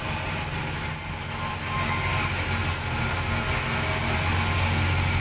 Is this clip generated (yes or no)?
no